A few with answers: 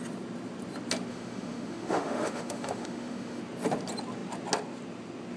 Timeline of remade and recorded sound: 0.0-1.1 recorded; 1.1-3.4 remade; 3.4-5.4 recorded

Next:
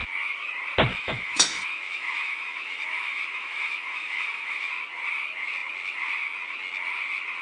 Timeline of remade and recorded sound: 0.0-0.9 recorded; 0.9-4.7 remade; 4.7-7.4 recorded

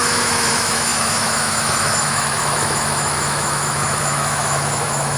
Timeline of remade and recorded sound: 0.0-5.2 remade

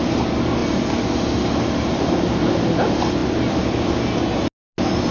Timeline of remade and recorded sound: 0.0-5.1 recorded

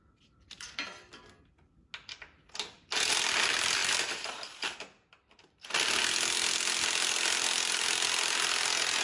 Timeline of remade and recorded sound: 0.0-9.0 recorded

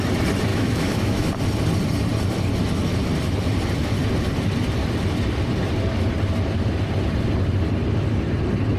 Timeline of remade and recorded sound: 0.0-0.5 recorded; 0.5-1.3 remade; 1.3-8.8 recorded